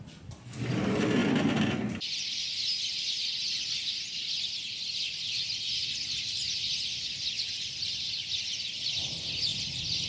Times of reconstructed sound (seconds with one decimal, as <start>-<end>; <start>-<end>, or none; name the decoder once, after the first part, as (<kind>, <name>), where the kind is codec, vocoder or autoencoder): none